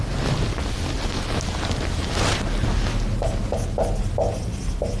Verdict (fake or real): real